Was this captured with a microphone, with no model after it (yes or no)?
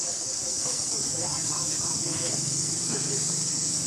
no